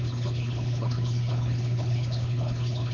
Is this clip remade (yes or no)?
yes